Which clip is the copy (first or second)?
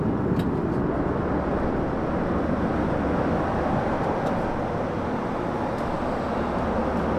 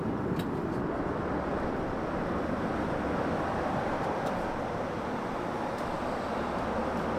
second